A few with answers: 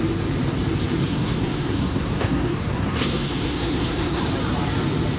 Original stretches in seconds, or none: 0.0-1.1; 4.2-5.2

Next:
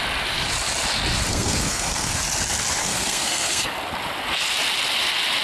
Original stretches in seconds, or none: 0.0-1.3; 2.2-2.8; 3.7-5.4

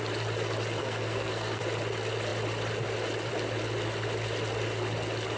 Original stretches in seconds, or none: 0.0-0.8; 1.6-5.4

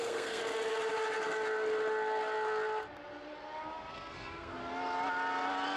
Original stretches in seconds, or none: 0.4-3.9; 4.6-5.8